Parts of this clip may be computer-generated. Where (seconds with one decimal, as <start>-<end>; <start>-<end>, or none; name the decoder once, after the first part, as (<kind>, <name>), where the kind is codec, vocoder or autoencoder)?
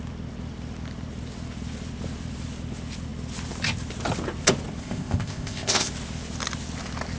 4.8-5.9 (codec, ZipCodec)